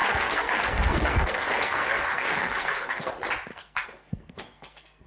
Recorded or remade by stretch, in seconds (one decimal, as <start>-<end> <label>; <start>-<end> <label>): 0.0-3.1 remade; 3.1-3.5 recorded; 3.5-5.1 remade